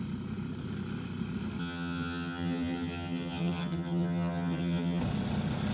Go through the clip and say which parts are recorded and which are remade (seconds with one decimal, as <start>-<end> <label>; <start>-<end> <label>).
0.0-1.6 recorded; 1.6-5.0 remade; 5.0-5.7 recorded